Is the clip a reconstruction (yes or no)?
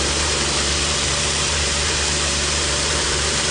yes